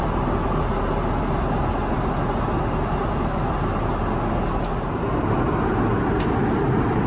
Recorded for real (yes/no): yes